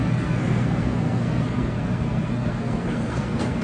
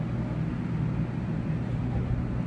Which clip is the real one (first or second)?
second